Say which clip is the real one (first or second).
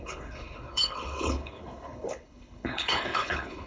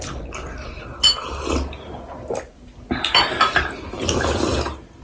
second